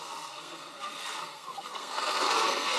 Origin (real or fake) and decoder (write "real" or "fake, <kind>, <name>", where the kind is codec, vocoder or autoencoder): fake, codec, SNAC